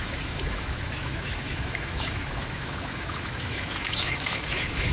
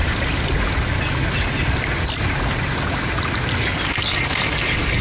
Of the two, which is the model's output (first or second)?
first